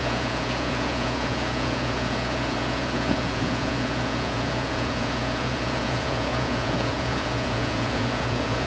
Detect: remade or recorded remade